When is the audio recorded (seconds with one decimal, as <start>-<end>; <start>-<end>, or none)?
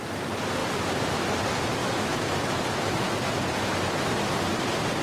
0.0-1.8; 3.3-5.0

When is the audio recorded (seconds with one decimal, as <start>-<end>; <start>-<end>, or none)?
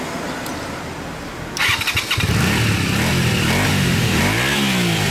0.0-3.7; 4.2-5.1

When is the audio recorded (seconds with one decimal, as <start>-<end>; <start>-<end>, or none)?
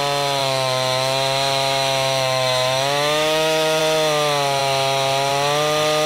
0.0-0.4; 3.8-6.1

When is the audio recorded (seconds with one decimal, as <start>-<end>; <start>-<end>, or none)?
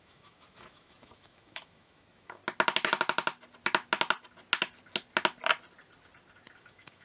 2.4-6.6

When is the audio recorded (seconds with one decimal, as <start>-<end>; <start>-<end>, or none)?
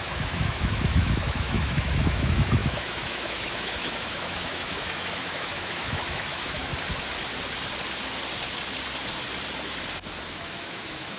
6.7-10.3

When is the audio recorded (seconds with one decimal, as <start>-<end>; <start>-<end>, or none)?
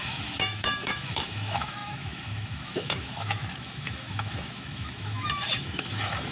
none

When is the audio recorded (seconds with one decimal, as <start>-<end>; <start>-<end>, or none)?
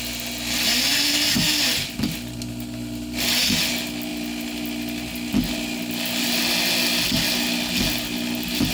0.0-8.7